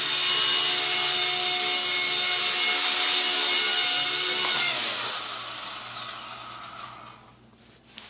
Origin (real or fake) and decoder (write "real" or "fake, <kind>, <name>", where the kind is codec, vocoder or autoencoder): real